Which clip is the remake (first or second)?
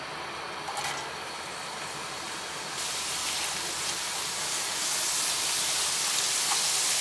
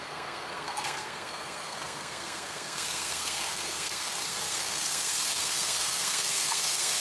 second